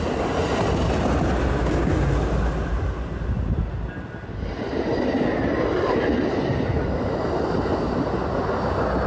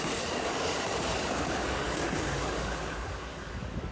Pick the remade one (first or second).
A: second